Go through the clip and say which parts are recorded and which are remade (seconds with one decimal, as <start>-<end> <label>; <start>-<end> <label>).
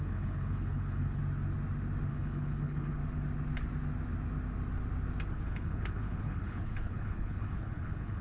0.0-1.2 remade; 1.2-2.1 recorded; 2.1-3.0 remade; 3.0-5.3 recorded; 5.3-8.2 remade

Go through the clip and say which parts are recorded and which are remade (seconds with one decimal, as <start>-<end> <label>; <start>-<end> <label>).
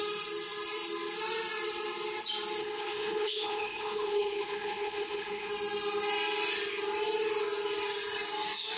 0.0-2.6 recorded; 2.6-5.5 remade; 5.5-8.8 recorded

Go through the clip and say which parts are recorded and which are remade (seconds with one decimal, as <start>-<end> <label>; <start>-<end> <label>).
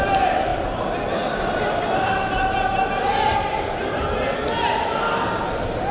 0.0-5.9 recorded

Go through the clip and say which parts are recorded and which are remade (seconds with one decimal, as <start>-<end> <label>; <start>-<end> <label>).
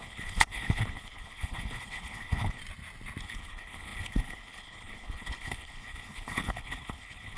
0.0-2.6 remade; 2.6-3.2 recorded; 3.2-7.4 remade